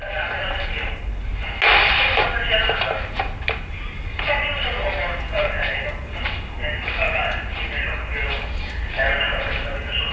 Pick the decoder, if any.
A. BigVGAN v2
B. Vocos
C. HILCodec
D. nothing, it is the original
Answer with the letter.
D